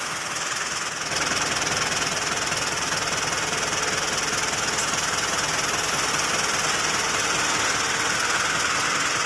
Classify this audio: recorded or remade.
recorded